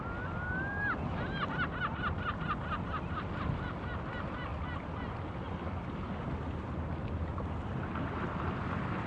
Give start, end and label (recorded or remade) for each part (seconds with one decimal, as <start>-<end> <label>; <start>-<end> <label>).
0.0-9.1 recorded